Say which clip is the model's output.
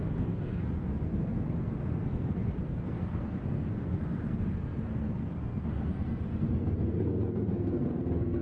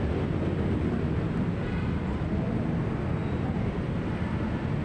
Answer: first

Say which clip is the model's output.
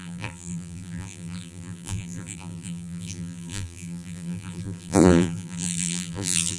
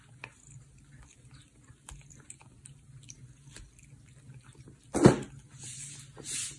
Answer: first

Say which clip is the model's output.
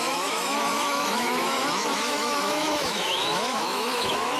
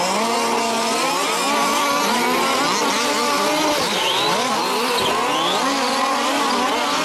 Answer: first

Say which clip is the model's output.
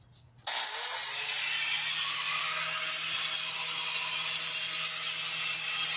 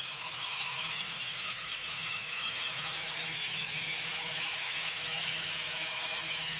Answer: second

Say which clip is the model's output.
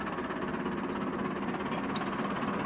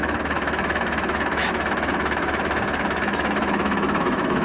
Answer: second